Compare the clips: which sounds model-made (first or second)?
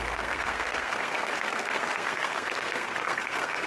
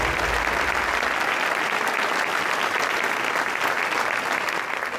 first